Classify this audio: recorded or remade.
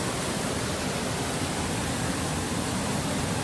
recorded